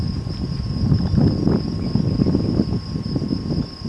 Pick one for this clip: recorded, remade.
recorded